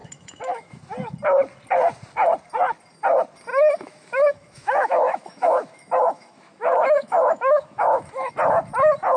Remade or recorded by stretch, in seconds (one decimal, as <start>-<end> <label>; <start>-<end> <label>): 0.0-0.8 remade; 0.8-3.5 recorded; 3.5-8.3 remade; 8.3-9.2 recorded